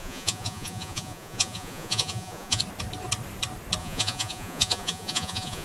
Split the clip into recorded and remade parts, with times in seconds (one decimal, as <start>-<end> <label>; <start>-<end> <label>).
0.0-2.6 remade; 2.6-3.8 recorded; 3.8-5.6 remade